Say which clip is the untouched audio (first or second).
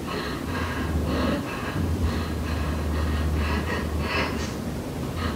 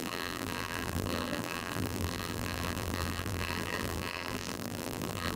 first